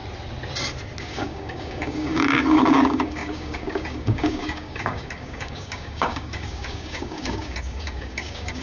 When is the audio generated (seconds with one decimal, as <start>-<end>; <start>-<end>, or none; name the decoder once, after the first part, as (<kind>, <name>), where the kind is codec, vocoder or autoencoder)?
1.0-8.6 (codec, DAC)